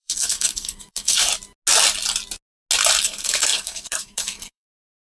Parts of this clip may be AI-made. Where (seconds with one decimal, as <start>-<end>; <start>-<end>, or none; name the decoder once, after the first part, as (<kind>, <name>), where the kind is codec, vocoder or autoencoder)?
0.0-1.3 (codec, SNAC); 3.0-5.1